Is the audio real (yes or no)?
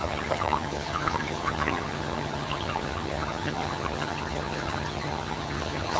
no